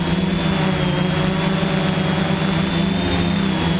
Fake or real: real